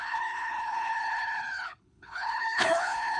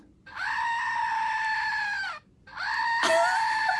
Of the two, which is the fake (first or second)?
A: first